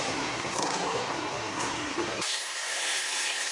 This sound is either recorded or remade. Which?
remade